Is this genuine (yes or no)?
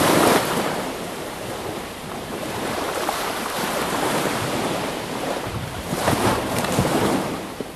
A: no